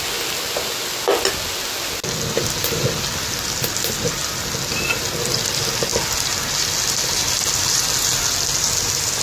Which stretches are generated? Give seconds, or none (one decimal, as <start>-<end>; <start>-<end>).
none

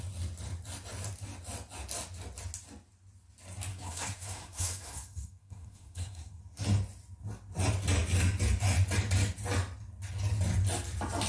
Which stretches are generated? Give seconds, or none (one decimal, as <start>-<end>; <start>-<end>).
3.7-6.4

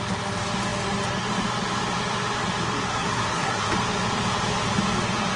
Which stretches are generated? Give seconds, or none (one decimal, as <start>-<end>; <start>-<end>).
2.9-3.7

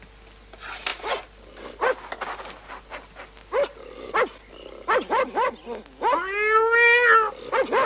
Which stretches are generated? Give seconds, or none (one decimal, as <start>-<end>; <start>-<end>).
none